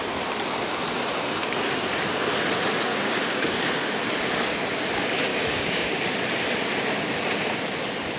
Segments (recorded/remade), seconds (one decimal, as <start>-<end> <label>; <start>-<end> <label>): 0.0-2.9 recorded; 2.9-3.7 remade; 3.7-5.3 recorded; 5.3-6.0 remade; 6.0-8.2 recorded